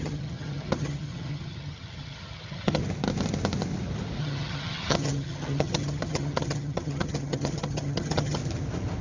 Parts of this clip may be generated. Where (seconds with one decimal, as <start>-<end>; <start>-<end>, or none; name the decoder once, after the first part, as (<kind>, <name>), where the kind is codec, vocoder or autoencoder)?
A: 0.0-2.8 (vocoder, HiFi-GAN); 4.2-8.4